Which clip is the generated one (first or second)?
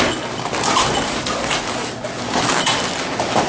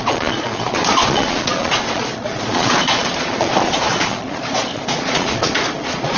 second